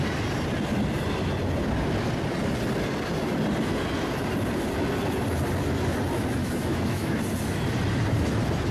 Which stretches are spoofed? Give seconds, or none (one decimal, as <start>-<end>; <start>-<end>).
6.4-7.2